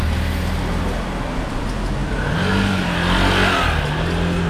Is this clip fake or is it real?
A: real